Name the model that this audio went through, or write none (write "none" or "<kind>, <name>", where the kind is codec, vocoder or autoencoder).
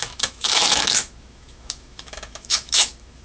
autoencoder, DAC-VAE